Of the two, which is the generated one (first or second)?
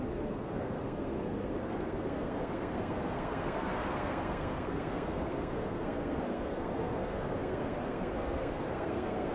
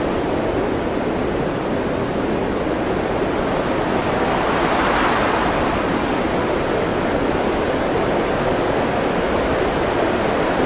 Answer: first